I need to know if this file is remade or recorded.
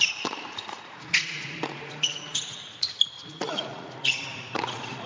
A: remade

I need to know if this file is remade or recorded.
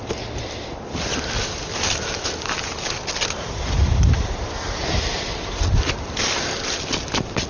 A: recorded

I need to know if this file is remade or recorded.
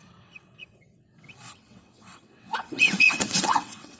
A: remade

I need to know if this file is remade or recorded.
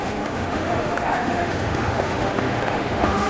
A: remade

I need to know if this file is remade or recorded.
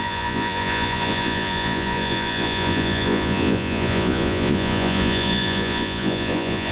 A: remade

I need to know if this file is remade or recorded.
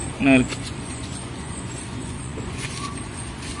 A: remade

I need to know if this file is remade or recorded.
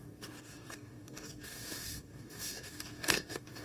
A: remade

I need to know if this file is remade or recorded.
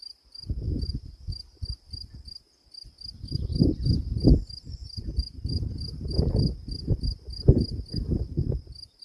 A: recorded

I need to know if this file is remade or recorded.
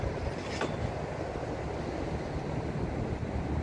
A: recorded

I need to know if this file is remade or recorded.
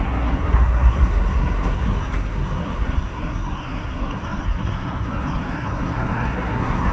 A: remade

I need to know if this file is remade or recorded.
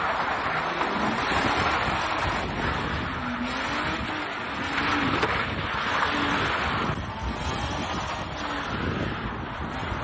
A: recorded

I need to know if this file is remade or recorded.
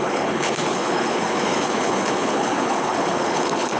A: remade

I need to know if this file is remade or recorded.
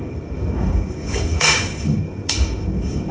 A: remade